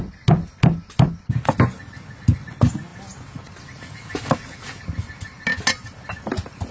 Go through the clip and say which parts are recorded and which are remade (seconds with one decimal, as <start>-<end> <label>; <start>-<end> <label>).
0.0-6.7 recorded